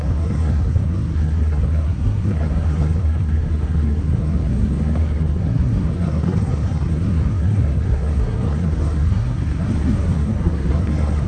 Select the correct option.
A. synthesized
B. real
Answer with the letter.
A